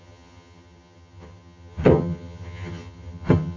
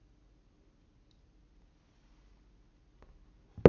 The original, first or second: second